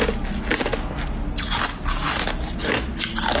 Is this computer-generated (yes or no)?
no